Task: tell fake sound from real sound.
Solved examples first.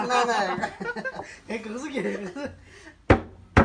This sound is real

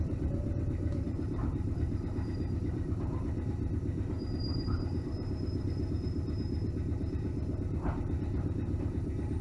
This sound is fake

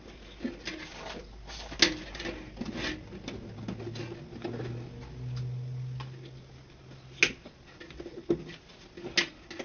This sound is real